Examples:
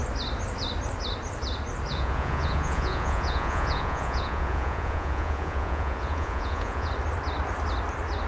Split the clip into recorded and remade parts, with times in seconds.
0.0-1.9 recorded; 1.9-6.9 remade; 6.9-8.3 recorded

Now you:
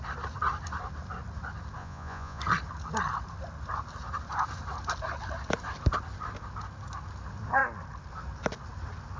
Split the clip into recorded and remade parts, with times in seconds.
0.0-1.8 recorded; 1.8-2.4 remade; 2.4-9.2 recorded

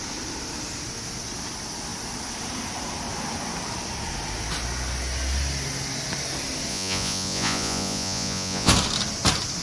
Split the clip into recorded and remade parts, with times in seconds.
0.0-6.7 recorded; 6.7-8.7 remade; 8.7-9.6 recorded

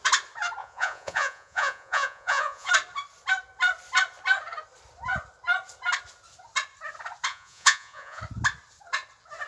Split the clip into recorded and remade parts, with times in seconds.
0.0-0.6 recorded; 0.6-2.7 remade; 2.7-7.3 recorded; 7.3-8.2 remade; 8.2-9.5 recorded

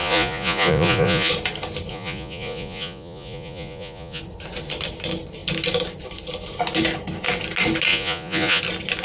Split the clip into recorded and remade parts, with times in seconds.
0.0-1.3 remade; 1.3-1.9 recorded; 1.9-4.2 remade; 4.2-7.9 recorded; 7.9-8.6 remade; 8.6-9.0 recorded

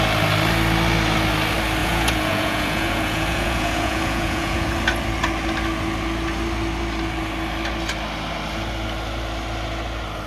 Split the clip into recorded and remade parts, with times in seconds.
0.0-1.8 recorded; 1.8-4.7 remade; 4.7-10.3 recorded

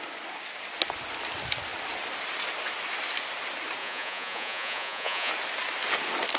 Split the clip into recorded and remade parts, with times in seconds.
0.0-3.8 recorded; 3.8-5.3 remade; 5.3-6.4 recorded